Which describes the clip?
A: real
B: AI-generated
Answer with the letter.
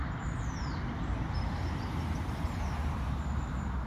B